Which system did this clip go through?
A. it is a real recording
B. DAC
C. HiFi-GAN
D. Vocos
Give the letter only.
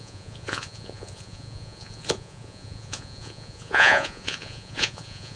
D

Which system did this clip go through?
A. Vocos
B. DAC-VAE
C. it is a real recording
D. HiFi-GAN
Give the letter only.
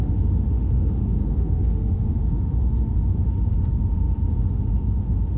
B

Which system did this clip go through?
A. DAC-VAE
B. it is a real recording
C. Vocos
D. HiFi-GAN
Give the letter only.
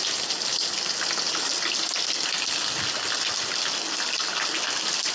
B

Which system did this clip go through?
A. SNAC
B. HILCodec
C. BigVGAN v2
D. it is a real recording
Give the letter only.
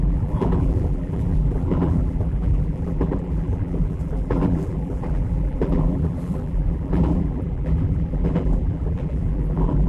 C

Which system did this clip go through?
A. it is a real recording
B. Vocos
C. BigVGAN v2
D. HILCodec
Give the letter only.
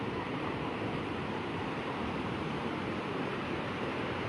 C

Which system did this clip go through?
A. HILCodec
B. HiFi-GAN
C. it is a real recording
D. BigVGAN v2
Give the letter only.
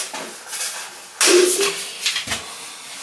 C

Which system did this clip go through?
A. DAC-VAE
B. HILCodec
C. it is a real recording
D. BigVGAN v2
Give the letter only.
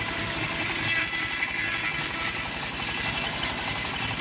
C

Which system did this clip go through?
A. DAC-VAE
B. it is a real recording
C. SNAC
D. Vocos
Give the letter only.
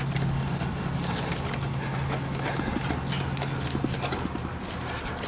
B